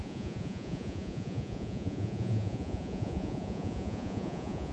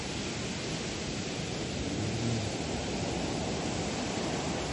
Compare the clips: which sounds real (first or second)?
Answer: second